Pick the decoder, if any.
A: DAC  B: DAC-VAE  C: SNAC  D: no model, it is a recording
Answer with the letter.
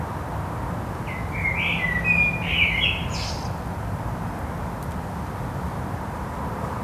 D